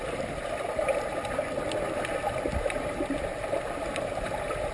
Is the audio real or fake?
real